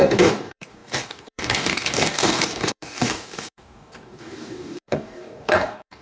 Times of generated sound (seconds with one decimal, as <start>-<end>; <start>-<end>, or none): 0.0-6.0